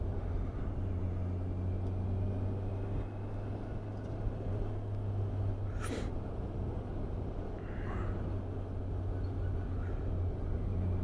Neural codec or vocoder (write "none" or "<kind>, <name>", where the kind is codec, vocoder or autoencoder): none